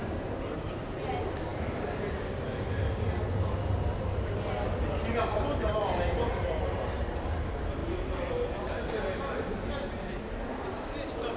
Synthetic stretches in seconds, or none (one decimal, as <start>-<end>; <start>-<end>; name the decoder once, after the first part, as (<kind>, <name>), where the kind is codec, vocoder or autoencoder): none